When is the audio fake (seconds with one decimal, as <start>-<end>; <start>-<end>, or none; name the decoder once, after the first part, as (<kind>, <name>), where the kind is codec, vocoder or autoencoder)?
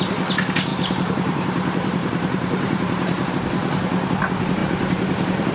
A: 0.7-3.3 (vocoder, BigVGAN v2); 4.6-5.5